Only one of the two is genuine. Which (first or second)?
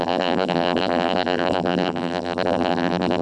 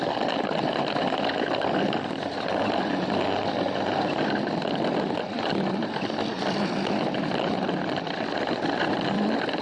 second